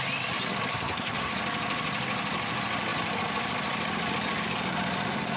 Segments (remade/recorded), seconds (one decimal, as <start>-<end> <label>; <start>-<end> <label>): 0.0-0.7 recorded; 0.7-1.3 remade; 1.3-5.4 recorded